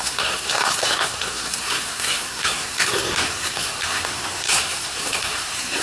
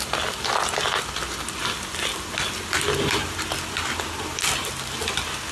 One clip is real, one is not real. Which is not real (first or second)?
first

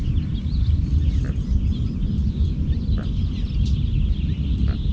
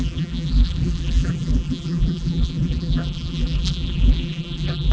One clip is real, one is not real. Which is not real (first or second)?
second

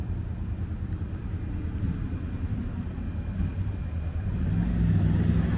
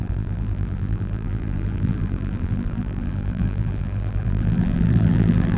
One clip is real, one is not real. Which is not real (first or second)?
second